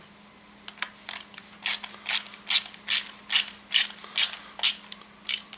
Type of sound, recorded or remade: recorded